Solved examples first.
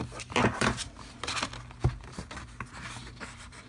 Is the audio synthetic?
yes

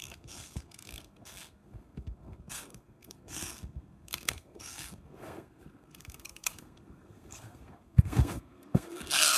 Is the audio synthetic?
yes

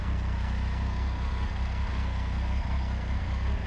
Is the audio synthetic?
yes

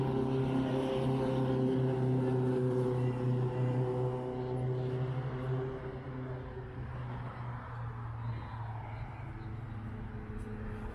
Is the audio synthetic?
no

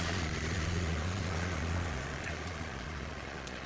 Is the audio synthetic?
yes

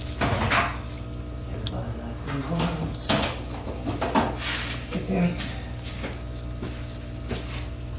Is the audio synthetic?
no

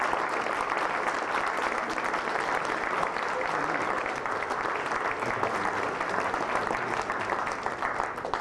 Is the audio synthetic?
no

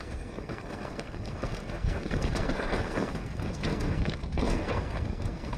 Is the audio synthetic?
yes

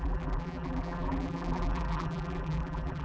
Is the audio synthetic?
yes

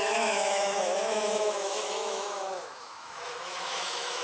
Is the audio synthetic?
yes